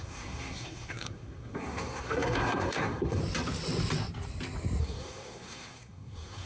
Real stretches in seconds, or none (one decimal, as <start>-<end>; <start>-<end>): 3.2-4.8